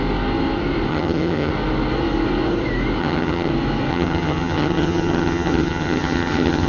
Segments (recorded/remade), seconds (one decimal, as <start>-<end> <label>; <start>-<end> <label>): 0.0-0.9 recorded; 0.9-1.5 remade; 1.5-3.0 recorded; 3.0-3.5 remade; 3.5-3.9 recorded; 3.9-6.7 remade